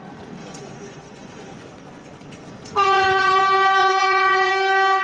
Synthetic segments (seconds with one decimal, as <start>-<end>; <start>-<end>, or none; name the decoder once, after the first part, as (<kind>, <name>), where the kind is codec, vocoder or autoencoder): 0.4-3.4 (vocoder, Vocos); 3.8-4.5